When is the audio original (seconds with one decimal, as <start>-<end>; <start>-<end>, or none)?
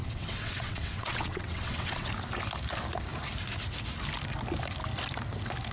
2.1-5.7